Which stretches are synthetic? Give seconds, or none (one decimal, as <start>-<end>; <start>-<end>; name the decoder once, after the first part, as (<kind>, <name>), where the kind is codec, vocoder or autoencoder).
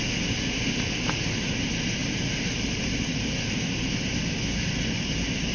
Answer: none